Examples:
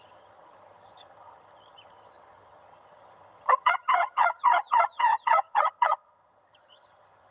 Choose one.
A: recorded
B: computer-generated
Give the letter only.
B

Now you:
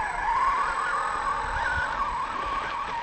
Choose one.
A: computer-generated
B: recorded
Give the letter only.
B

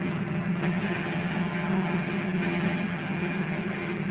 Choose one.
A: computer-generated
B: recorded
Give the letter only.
A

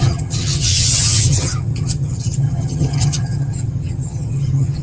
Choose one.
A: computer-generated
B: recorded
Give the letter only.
A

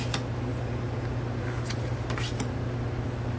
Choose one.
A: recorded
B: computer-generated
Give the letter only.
A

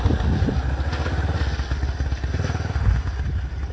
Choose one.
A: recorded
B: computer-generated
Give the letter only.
A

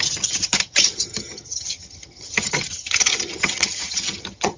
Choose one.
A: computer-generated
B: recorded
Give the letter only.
A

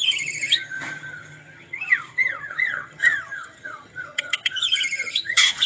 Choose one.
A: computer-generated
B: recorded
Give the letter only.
A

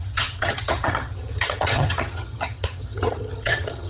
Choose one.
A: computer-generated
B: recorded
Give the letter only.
A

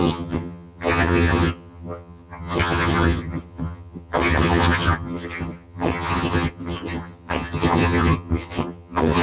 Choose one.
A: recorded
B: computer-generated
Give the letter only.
B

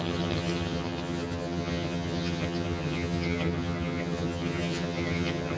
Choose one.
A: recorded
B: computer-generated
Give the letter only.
B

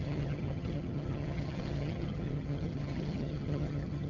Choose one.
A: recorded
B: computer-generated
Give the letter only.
B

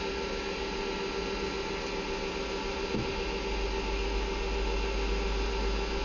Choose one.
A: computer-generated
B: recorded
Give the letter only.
B